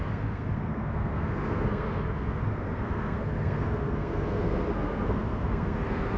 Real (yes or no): no